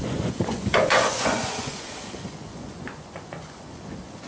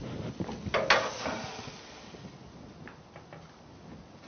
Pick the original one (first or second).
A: second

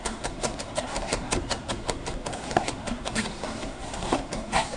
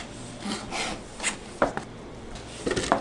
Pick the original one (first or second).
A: second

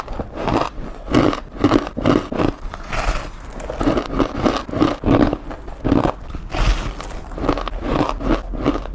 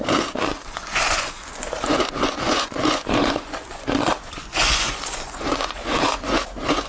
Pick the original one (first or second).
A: first